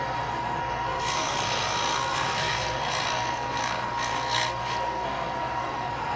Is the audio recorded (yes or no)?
no